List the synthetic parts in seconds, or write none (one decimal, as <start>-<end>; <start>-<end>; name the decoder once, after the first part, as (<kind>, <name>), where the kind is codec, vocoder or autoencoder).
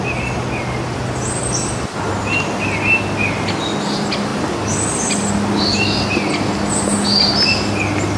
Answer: none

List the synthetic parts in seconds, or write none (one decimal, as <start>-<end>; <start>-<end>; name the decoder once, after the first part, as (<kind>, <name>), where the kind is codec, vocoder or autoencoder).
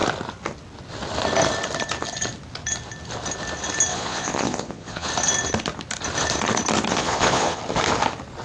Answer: 3.9-5.1 (vocoder, Vocos); 6.9-7.6